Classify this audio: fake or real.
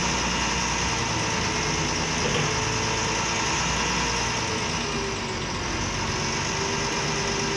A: real